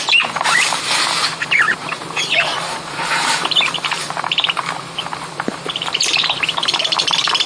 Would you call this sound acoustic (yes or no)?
no